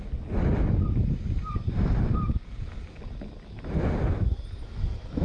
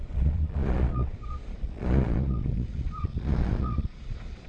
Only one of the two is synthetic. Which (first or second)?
second